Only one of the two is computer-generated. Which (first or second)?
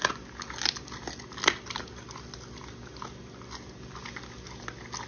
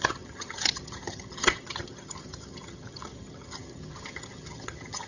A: second